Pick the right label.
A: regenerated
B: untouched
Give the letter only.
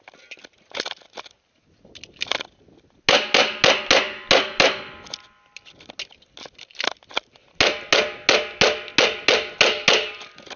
B